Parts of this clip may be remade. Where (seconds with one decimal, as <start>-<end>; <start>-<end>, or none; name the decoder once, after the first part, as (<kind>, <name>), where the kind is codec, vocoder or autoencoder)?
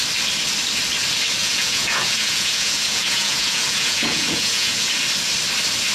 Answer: 1.4-4.9 (vocoder, Vocos)